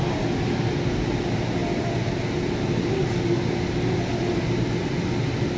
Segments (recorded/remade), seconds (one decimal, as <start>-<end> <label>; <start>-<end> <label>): 0.0-5.6 recorded

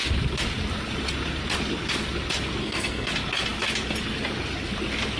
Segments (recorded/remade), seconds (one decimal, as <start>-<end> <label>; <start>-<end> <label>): 0.0-2.6 recorded; 2.6-3.1 remade; 3.1-5.2 recorded

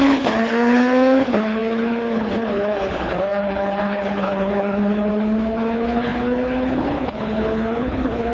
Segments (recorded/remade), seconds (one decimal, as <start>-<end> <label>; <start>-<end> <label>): 0.0-8.3 remade

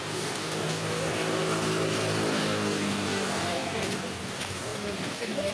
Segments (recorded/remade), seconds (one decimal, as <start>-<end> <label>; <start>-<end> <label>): 0.0-1.7 remade; 1.7-2.3 recorded; 2.3-5.5 remade

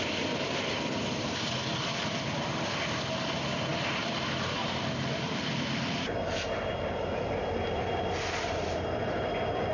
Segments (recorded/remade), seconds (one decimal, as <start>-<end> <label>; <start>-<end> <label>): 0.0-9.7 remade

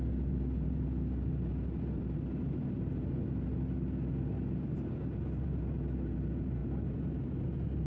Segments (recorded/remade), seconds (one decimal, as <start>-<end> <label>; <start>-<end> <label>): 0.0-7.9 recorded

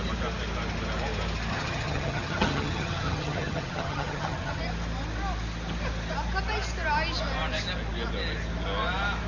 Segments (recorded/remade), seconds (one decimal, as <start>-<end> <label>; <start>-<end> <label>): 0.0-1.5 recorded; 1.5-4.6 remade; 4.6-9.3 recorded